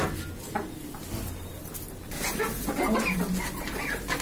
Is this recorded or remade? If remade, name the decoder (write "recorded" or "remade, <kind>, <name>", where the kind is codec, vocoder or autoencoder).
recorded